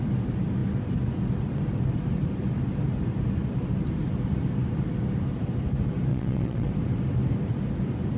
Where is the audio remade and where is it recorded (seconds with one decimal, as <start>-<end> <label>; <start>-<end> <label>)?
0.0-6.1 recorded; 6.1-6.7 remade; 6.7-8.2 recorded